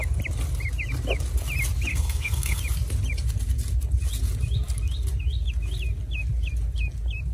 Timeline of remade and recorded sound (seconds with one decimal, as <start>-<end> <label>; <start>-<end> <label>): 0.0-1.9 recorded; 1.9-2.6 remade; 2.6-7.3 recorded